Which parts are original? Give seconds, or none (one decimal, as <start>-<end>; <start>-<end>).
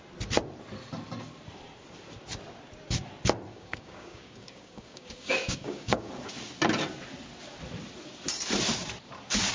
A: 0.0-3.5; 6.1-9.5